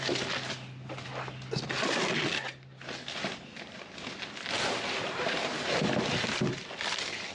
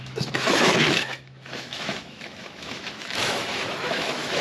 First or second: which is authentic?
first